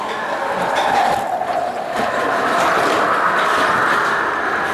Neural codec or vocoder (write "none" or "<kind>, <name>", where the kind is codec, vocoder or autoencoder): vocoder, BigVGAN v2